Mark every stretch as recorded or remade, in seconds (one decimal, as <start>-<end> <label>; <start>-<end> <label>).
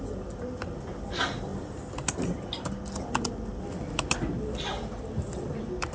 0.0-5.9 recorded